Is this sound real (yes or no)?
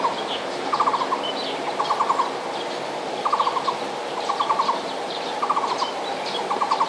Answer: yes